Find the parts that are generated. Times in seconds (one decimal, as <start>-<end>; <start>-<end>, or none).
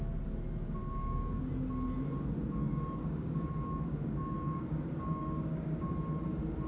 0.8-1.5; 2.6-5.9